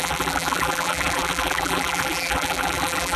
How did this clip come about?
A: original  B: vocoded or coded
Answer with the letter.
B